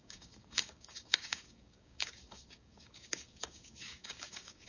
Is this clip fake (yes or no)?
yes